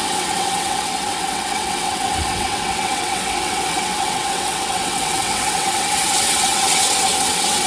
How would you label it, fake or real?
fake